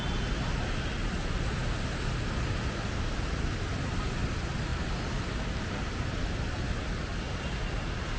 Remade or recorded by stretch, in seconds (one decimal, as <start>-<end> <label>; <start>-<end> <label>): 0.0-8.2 recorded